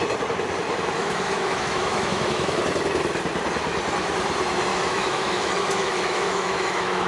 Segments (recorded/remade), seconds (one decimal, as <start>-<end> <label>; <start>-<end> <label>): 0.0-1.0 recorded; 1.0-2.6 remade; 2.6-4.7 recorded; 4.7-7.1 remade